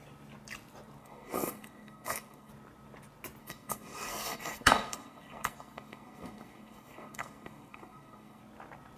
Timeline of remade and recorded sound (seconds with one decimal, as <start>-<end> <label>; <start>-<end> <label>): 0.0-1.0 recorded; 1.0-2.5 remade; 2.5-3.4 recorded; 3.4-8.4 remade; 8.4-9.0 recorded